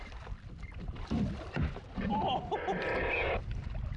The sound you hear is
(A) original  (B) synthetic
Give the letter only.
B